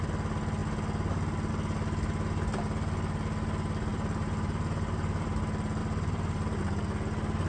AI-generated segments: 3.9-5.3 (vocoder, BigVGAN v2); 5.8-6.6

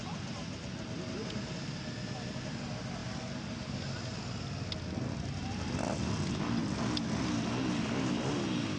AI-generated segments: none